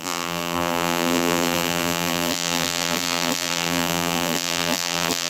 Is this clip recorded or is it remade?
remade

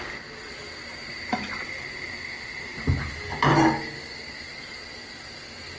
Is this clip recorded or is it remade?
recorded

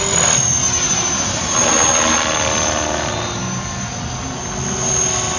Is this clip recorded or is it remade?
recorded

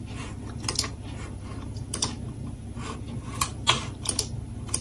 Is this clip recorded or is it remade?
remade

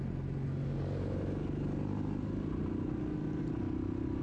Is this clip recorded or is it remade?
recorded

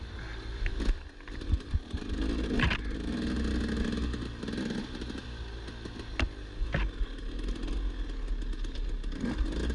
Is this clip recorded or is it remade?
recorded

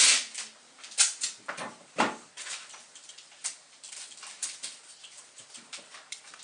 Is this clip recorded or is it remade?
recorded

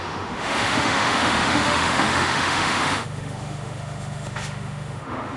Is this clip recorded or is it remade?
remade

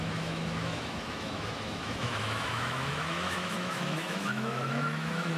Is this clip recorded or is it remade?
remade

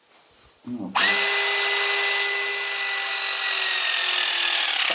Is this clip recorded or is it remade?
recorded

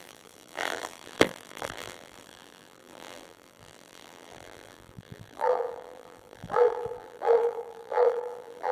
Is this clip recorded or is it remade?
remade